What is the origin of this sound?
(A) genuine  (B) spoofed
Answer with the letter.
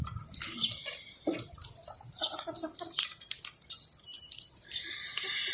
A